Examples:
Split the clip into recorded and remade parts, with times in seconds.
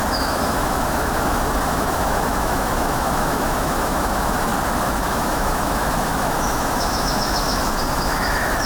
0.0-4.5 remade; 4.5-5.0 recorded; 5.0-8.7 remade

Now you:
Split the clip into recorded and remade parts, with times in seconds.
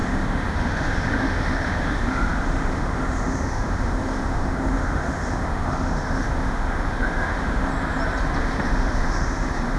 0.0-7.7 remade; 7.7-8.4 recorded; 8.4-9.8 remade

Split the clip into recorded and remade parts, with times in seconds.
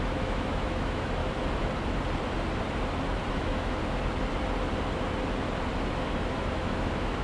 0.0-1.2 remade; 1.2-3.3 recorded; 3.3-3.8 remade; 3.8-5.9 recorded; 5.9-7.2 remade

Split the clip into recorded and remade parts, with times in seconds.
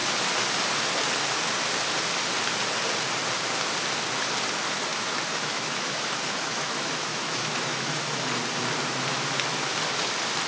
0.0-4.9 recorded; 4.9-8.2 remade; 8.2-10.5 recorded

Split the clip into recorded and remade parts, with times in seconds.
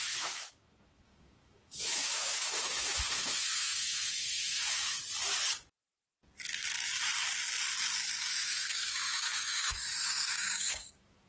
0.0-5.0 remade; 5.0-8.3 recorded; 8.3-11.3 remade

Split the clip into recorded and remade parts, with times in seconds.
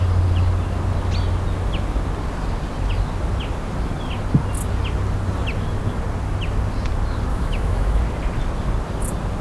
0.0-7.3 recorded; 7.3-8.0 remade; 8.0-9.4 recorded